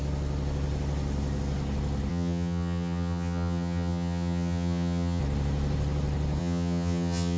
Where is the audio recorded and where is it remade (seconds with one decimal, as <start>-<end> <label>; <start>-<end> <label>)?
0.0-2.1 recorded; 2.1-5.2 remade; 5.2-6.4 recorded; 6.4-7.4 remade